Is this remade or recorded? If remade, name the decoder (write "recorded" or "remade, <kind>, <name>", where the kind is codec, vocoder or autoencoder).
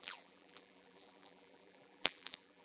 remade, vocoder, BigVGAN v2